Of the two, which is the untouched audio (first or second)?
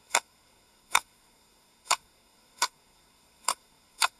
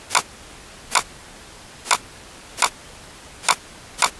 second